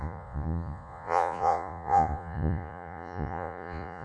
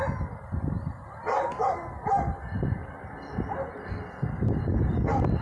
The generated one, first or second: first